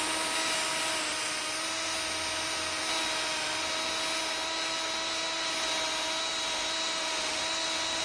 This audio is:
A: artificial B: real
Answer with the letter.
B